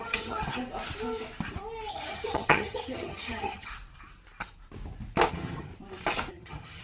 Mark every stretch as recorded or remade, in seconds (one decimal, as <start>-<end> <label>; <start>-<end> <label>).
0.0-0.6 remade; 0.6-1.9 recorded; 1.9-3.7 remade; 3.7-5.3 recorded; 5.3-5.7 remade; 5.7-6.3 recorded; 6.3-6.8 remade